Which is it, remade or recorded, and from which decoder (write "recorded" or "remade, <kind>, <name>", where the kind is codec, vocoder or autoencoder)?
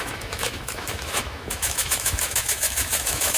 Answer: remade, autoencoder, DAC-VAE